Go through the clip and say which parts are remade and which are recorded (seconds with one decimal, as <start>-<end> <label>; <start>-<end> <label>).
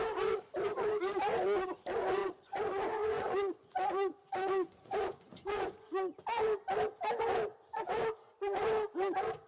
0.0-2.2 recorded; 2.2-5.9 remade; 5.9-7.5 recorded; 7.5-8.0 remade; 8.0-9.5 recorded